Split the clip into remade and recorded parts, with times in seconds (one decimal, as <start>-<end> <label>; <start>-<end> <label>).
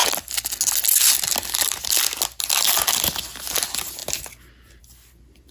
0.0-5.5 recorded